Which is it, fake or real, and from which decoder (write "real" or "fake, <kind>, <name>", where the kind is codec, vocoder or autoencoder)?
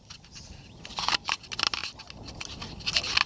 real